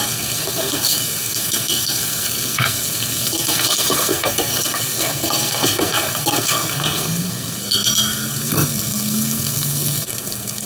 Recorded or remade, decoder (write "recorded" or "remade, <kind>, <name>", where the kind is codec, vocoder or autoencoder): remade, codec, SNAC